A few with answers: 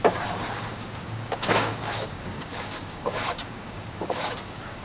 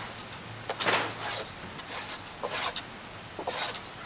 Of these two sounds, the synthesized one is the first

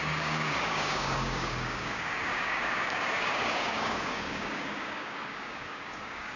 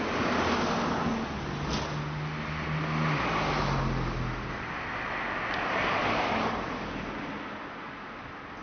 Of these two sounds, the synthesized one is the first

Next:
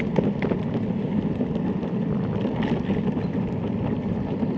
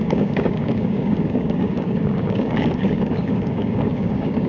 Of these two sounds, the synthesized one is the second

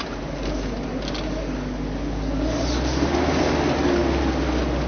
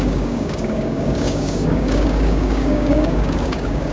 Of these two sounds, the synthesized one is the second